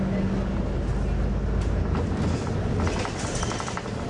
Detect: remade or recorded recorded